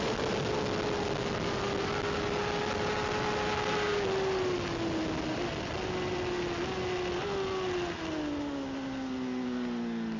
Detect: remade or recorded recorded